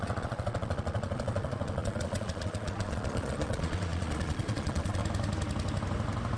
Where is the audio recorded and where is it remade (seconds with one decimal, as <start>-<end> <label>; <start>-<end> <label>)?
0.0-5.0 remade; 5.0-6.4 recorded